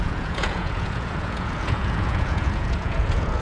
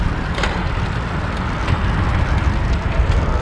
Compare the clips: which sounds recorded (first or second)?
second